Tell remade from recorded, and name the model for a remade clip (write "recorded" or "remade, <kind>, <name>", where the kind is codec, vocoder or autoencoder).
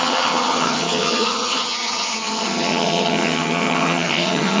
remade, vocoder, HiFi-GAN